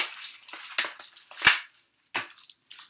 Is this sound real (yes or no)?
yes